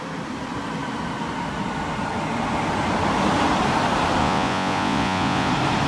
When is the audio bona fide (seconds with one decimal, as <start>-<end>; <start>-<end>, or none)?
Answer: 0.0-4.2; 5.5-5.9